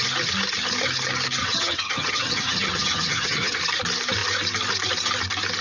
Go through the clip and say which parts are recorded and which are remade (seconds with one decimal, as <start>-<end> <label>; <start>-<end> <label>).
0.0-1.4 recorded; 1.4-3.6 remade; 3.6-5.6 recorded